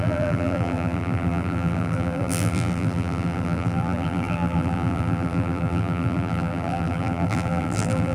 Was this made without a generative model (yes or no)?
no